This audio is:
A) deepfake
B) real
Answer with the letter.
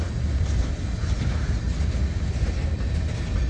B